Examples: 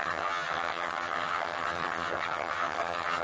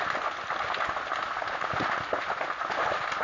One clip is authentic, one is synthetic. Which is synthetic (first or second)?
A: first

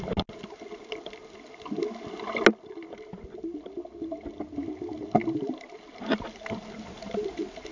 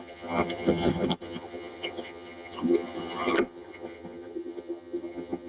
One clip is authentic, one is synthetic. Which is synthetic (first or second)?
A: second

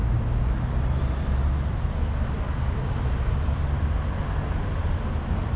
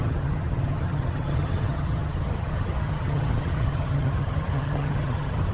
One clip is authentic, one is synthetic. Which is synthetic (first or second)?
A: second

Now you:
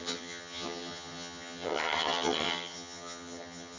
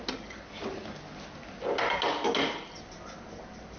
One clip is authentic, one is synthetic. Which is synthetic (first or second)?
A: first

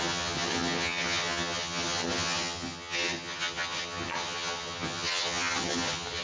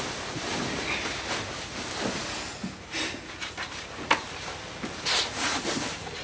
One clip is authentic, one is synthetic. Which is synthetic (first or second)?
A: first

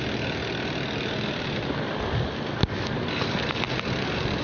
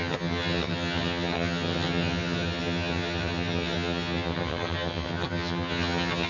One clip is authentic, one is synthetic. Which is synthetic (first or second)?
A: second